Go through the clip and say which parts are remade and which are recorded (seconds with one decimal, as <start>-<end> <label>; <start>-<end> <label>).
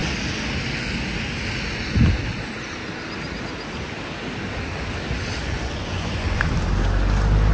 0.0-5.4 recorded; 5.4-6.5 remade; 6.5-7.5 recorded